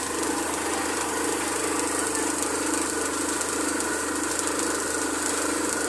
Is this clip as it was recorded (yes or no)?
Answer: yes